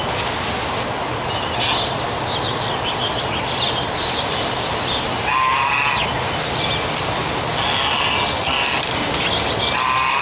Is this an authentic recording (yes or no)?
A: yes